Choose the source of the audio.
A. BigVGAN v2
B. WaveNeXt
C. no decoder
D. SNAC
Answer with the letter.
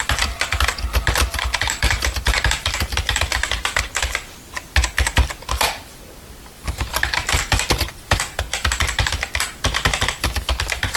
A